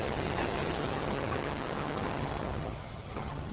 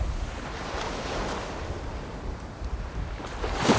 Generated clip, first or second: first